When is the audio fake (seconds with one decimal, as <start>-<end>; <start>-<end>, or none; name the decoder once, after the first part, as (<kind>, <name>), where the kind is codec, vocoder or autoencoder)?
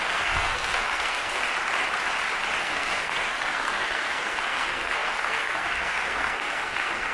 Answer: 0.0-1.4 (codec, SNAC); 2.6-7.1